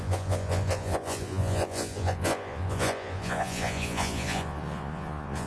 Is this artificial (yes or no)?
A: yes